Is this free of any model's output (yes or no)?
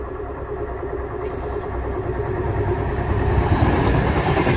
yes